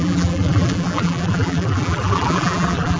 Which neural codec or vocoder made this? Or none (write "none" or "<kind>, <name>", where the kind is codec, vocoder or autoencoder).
vocoder, BigVGAN v2